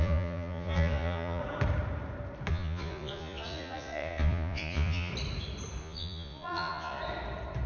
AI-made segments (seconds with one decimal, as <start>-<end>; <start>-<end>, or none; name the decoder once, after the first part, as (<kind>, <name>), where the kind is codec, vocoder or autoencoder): 0.0-1.4 (vocoder, Vocos); 2.5-5.1; 5.8-7.0